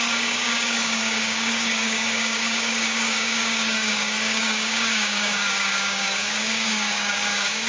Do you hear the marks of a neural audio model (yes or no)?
yes